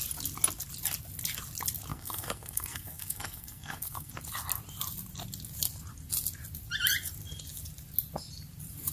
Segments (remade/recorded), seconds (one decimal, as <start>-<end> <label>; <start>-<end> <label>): 0.0-1.9 recorded; 1.9-4.1 remade; 4.1-8.9 recorded